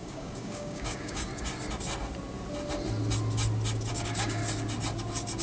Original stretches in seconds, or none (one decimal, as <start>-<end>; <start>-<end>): 1.3-3.9; 4.4-5.4